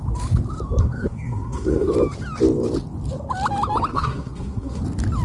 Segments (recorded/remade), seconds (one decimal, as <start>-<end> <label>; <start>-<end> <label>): 0.0-0.8 recorded; 0.8-1.9 remade; 1.9-3.9 recorded; 3.9-4.8 remade; 4.8-5.2 recorded